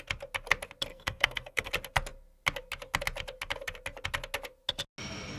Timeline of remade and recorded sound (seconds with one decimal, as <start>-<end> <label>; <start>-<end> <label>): 0.0-0.9 recorded; 0.9-1.7 remade; 1.7-5.4 recorded